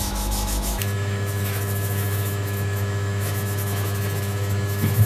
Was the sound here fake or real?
fake